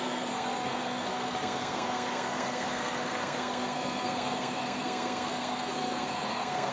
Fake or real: fake